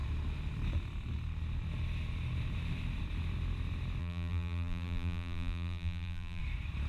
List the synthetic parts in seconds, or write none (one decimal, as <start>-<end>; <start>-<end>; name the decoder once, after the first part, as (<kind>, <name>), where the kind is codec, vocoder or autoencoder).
4.0-6.4 (vocoder, BigVGAN v2)